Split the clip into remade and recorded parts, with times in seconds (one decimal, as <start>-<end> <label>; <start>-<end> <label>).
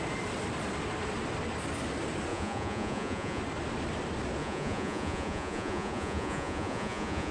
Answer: 0.0-2.3 recorded; 2.3-3.4 remade; 3.4-4.4 recorded; 4.4-7.3 remade